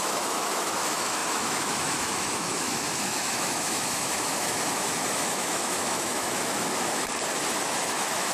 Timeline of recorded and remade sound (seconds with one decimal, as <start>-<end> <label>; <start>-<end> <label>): 0.0-7.1 remade; 7.1-7.8 recorded; 7.8-8.3 remade